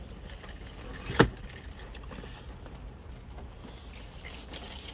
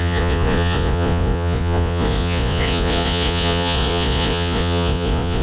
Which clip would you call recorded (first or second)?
first